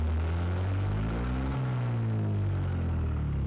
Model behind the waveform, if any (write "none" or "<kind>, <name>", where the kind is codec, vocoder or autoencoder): none